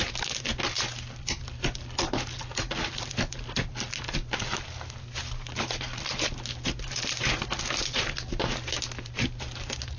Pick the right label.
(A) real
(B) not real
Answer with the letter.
A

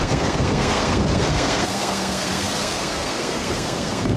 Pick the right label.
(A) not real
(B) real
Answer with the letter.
A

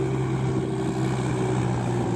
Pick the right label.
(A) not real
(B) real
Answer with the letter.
B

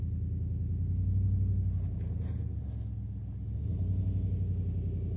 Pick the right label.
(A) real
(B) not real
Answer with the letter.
A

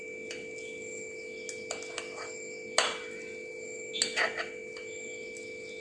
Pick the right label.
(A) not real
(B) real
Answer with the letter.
B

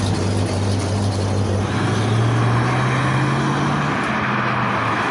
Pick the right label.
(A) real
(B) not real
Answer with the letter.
A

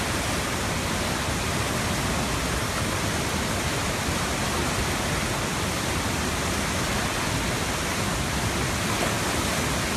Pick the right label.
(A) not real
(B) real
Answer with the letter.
B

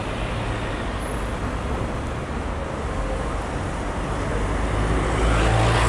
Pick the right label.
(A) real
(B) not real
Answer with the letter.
A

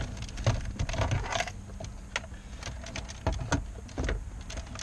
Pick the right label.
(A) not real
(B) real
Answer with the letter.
B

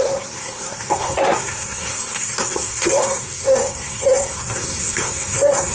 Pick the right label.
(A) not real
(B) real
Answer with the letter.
A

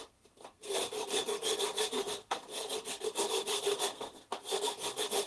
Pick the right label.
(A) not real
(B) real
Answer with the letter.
A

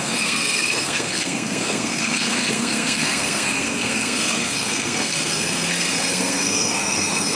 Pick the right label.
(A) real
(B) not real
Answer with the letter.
B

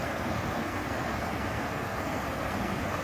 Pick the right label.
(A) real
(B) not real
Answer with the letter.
B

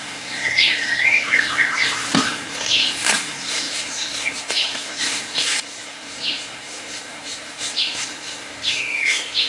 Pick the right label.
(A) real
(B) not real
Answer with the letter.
B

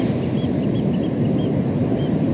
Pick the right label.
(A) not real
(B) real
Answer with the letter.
B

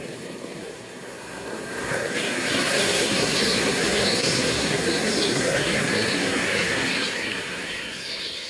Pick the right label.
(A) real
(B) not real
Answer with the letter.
B